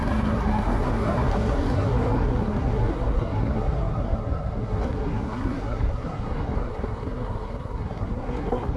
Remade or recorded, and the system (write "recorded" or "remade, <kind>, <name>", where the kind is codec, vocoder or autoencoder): remade, codec, SNAC